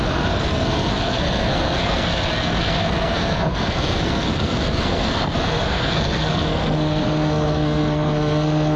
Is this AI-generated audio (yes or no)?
yes